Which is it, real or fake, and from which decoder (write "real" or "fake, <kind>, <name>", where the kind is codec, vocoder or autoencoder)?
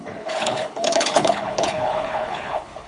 fake, codec, HILCodec